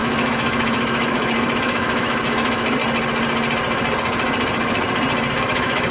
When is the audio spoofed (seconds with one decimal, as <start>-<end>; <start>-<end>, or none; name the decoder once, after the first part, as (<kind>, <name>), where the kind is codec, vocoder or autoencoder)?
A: 0.0-2.8 (autoencoder, DAC-VAE); 5.4-5.9